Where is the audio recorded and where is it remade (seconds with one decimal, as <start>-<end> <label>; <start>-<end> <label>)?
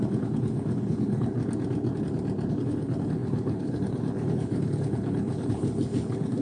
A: 0.0-1.4 remade; 1.4-2.5 recorded; 2.5-6.4 remade